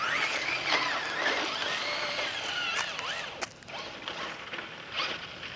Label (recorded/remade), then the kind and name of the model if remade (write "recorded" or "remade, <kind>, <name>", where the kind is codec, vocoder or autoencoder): recorded